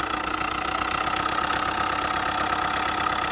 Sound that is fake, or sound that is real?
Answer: real